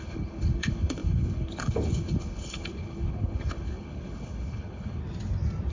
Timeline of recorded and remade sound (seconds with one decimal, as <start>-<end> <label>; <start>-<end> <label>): 0.0-5.0 remade; 5.0-5.7 recorded